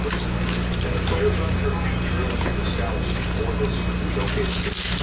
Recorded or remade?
recorded